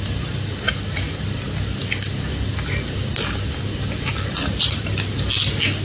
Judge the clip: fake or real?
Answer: real